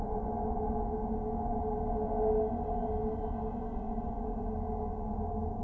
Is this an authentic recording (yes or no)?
yes